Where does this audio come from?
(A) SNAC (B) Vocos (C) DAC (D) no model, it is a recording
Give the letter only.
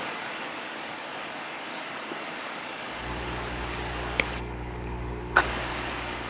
C